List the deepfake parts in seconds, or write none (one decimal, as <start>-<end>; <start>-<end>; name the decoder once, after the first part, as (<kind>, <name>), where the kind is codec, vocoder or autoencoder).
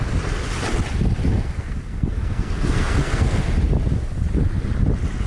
1.2-3.4 (codec, SNAC)